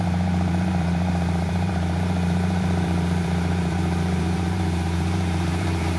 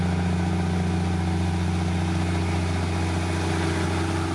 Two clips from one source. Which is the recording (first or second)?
second